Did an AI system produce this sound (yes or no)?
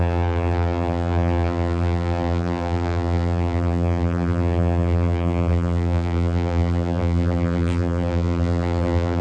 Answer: yes